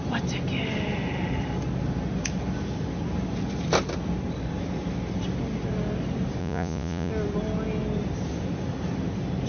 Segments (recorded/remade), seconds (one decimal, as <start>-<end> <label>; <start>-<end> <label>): 0.0-6.4 recorded; 6.4-7.1 remade; 7.1-9.5 recorded